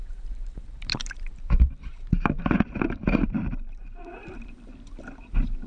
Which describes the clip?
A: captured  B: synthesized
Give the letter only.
B